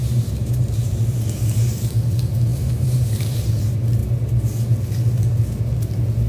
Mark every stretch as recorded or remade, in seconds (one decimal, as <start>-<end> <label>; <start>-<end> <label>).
0.0-0.9 remade; 0.9-2.5 recorded; 2.5-3.5 remade; 3.5-6.3 recorded